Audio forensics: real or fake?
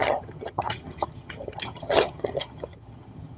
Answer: fake